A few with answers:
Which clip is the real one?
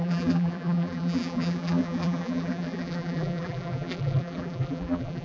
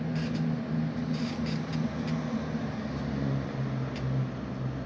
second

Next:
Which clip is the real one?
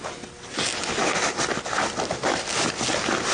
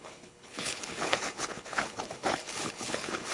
first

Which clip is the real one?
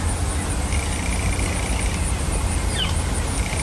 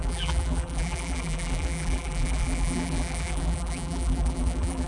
first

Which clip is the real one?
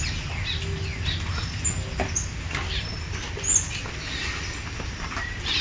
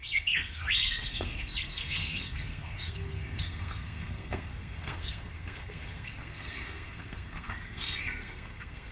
first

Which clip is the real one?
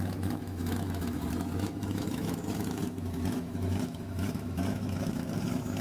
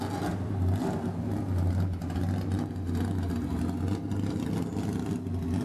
second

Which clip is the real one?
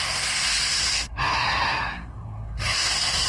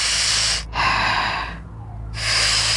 second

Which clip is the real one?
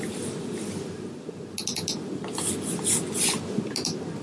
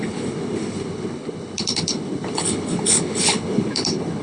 first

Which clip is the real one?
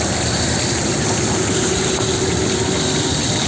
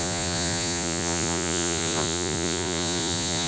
first